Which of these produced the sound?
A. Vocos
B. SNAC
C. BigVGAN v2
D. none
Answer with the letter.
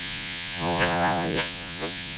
A